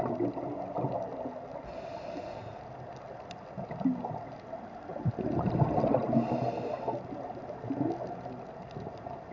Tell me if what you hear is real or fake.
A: real